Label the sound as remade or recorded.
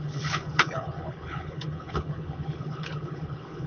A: remade